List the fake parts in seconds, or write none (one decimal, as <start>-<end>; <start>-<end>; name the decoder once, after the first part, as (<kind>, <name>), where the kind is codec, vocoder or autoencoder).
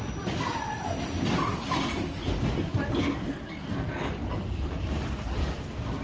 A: 0.0-1.3 (vocoder, BigVGAN v2)